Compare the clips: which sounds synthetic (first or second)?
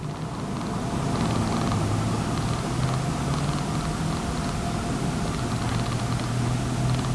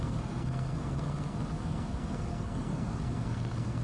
second